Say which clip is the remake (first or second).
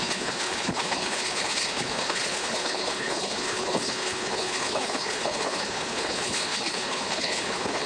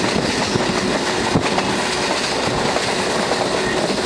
first